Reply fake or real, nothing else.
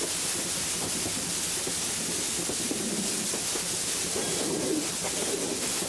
real